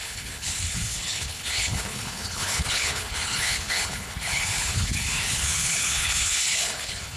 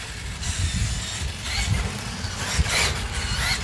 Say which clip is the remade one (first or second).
first